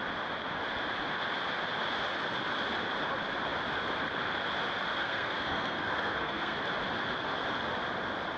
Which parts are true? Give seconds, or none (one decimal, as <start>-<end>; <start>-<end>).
0.0-5.0; 6.6-8.4